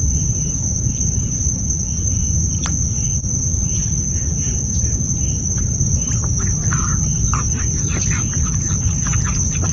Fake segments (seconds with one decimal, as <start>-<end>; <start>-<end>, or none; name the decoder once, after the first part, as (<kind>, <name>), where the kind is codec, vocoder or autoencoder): 0.0-2.2 (vocoder, BigVGAN v2); 4.1-6.1; 8.6-9.7